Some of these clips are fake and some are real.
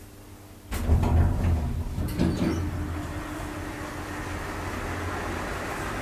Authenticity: real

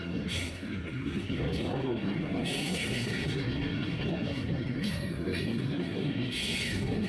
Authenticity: fake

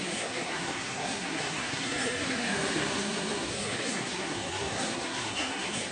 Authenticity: fake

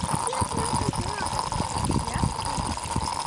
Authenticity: real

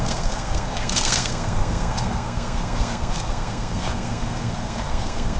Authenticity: fake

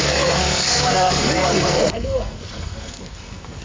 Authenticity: fake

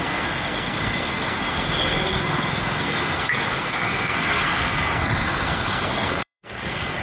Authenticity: fake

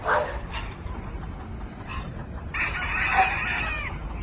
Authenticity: real